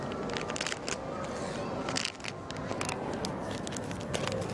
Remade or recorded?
recorded